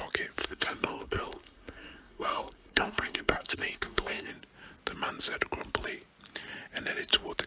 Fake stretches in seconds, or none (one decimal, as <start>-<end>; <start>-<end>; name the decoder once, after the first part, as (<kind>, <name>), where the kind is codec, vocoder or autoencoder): 0.4-4.3 (codec, SNAC)